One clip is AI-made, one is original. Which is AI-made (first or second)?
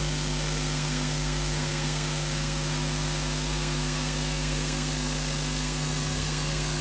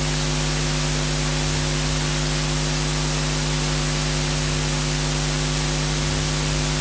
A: first